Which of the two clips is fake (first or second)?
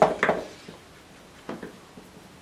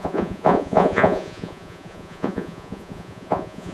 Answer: second